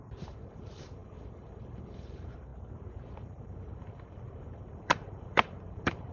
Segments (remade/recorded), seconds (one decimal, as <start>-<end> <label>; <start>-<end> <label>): 0.0-2.5 remade; 2.5-3.1 recorded; 3.1-6.1 remade